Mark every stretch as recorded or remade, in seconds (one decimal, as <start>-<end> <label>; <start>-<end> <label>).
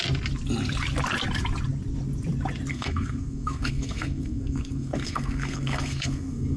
0.0-2.7 recorded; 2.7-6.6 remade